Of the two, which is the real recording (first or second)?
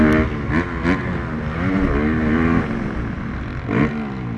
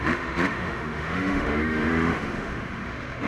first